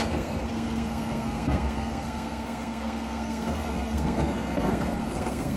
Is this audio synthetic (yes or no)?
yes